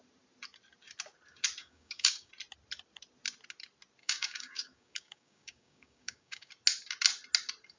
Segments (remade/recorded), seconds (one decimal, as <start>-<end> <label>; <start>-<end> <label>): 0.0-1.6 recorded; 1.6-2.3 remade; 2.3-4.0 recorded; 4.0-6.5 remade; 6.5-7.8 recorded

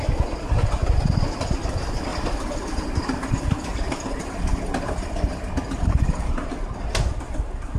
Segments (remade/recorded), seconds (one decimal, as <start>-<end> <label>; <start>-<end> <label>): 0.0-7.8 recorded